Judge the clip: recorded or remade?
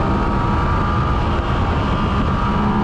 recorded